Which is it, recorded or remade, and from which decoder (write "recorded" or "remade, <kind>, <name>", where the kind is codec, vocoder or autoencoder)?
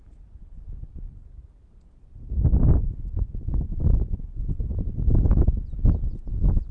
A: recorded